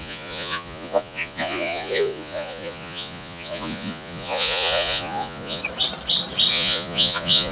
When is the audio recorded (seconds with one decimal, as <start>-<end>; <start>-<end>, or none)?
5.6-6.5